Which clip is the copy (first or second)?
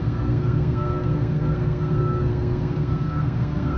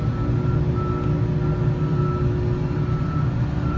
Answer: first